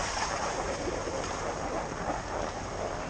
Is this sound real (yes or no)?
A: yes